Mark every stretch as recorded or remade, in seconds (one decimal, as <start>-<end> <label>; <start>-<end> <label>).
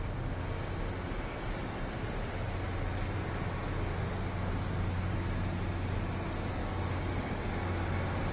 0.0-6.6 recorded; 6.6-7.5 remade; 7.5-8.3 recorded